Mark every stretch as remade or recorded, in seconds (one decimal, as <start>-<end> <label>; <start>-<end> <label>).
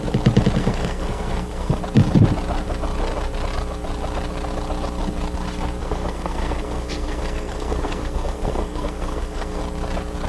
0.0-0.6 recorded; 0.6-1.8 remade; 1.8-5.8 recorded; 5.8-9.6 remade; 9.6-10.3 recorded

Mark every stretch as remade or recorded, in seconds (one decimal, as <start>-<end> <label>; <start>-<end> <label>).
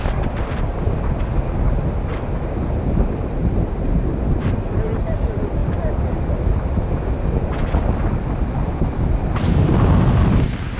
0.0-10.8 recorded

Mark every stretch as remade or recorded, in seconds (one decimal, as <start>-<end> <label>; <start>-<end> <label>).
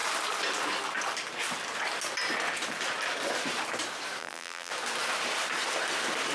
0.0-4.2 recorded; 4.2-4.7 remade; 4.7-6.3 recorded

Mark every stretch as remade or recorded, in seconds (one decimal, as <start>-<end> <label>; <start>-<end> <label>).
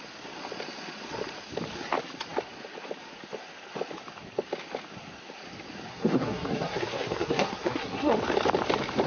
0.0-5.9 recorded; 5.9-8.1 remade; 8.1-9.1 recorded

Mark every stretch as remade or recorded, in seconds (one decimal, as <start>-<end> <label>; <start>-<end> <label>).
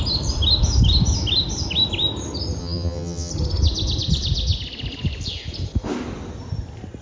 0.0-2.6 recorded; 2.6-3.3 remade; 3.3-7.0 recorded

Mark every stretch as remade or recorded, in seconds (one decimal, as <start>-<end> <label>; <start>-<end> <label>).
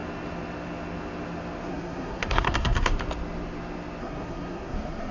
0.0-1.7 recorded; 1.7-2.9 remade; 2.9-4.0 recorded; 4.0-5.1 remade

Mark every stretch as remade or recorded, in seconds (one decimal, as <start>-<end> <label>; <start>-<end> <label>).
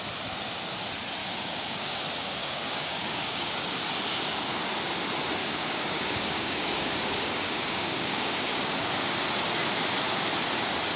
0.0-1.2 recorded; 1.2-2.0 remade; 2.0-2.4 recorded; 2.4-3.8 remade; 3.8-5.4 recorded; 5.4-8.6 remade; 8.6-11.0 recorded